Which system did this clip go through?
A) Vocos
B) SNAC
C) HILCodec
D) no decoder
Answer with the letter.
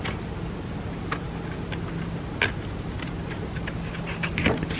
D